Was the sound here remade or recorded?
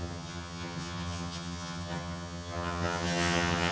remade